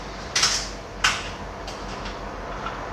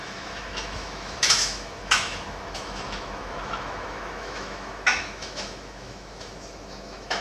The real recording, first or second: first